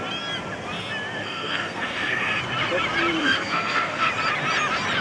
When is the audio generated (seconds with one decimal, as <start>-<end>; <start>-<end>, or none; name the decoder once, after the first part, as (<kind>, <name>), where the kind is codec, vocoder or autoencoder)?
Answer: 1.2-2.4 (codec, SNAC); 3.2-4.1